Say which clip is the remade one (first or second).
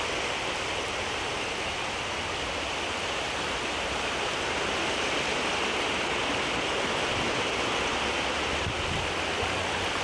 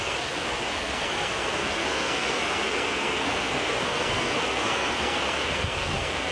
second